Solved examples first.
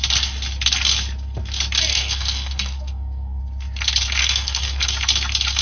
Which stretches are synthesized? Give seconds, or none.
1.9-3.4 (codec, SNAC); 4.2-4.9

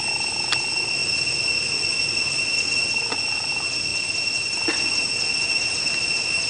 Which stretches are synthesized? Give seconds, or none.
none

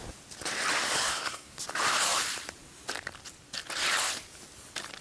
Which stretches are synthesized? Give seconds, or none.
1.1-1.6 (codec, SNAC)

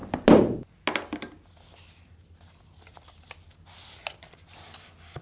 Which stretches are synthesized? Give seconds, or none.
none